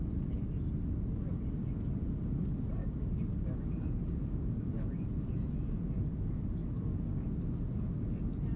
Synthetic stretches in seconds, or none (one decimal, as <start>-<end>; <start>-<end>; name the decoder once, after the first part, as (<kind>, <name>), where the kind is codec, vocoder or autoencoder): 2.8-3.5 (codec, DAC); 4.2-4.9